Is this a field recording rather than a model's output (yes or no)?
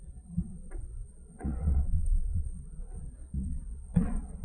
no